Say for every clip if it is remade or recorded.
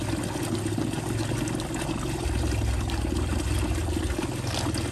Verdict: recorded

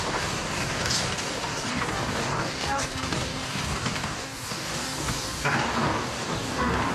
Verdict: remade